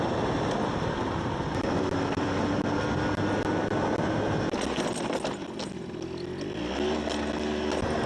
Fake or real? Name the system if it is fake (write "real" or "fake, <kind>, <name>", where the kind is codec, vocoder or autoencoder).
real